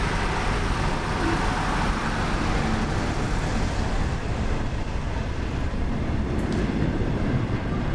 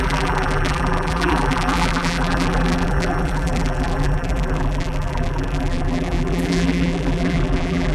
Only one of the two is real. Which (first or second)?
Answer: first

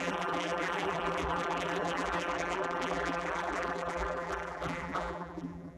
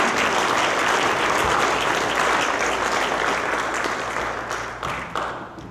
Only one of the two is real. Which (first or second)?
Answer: second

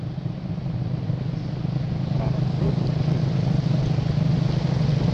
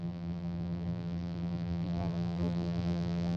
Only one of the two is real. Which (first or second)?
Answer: first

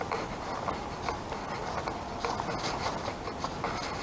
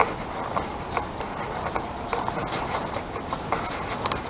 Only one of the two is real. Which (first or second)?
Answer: first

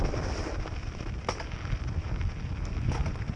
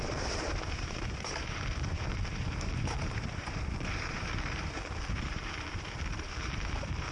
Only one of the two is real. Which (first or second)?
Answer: first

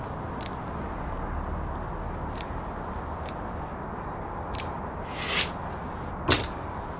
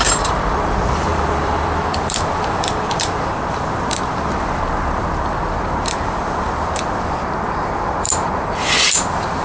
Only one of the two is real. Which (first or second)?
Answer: first